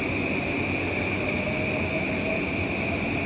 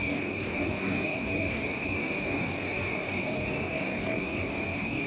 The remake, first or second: second